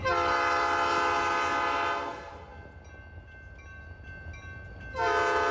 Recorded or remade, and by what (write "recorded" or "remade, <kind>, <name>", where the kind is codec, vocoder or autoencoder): recorded